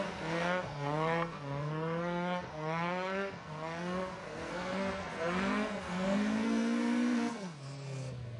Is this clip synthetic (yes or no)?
yes